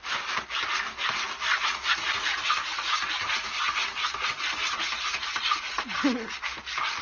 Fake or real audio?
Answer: real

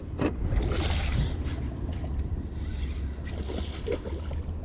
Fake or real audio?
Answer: real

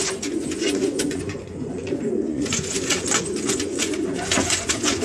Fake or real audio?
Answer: fake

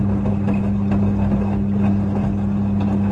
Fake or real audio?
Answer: real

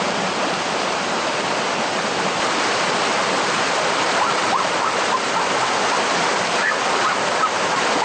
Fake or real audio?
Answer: real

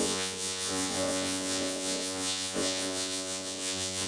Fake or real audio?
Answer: fake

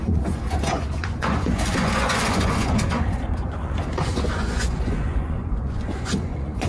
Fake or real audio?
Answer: fake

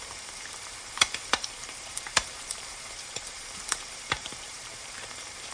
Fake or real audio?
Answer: fake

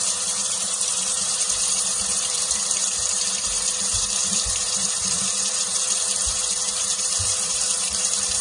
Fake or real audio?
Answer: fake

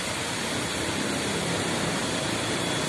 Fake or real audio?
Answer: real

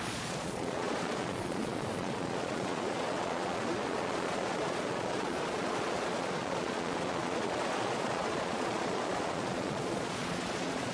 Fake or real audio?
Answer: fake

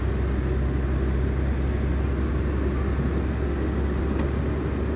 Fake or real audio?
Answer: real